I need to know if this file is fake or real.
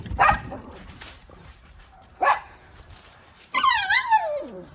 fake